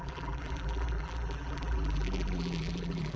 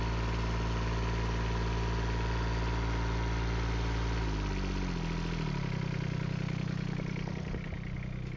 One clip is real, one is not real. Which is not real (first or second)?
first